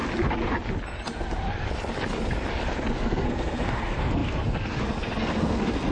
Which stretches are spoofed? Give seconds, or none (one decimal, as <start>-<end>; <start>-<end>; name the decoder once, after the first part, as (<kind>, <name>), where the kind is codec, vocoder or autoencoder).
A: 2.9-5.9 (codec, SNAC)